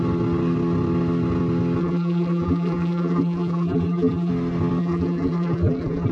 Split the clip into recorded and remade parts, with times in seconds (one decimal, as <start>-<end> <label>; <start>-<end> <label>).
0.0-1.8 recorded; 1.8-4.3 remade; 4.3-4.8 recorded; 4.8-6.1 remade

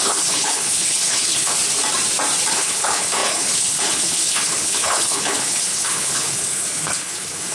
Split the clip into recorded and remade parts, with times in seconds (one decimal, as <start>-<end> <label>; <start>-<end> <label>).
0.0-1.5 remade; 1.5-2.5 recorded; 2.5-7.5 remade

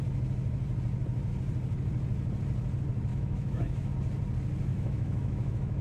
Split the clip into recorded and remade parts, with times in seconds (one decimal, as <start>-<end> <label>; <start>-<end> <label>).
0.0-3.1 recorded; 3.1-3.9 remade; 3.9-4.7 recorded; 4.7-5.8 remade